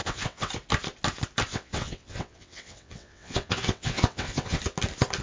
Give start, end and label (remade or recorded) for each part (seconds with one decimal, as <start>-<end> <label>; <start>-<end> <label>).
0.0-0.5 remade; 0.5-1.5 recorded; 1.5-4.6 remade; 4.6-5.2 recorded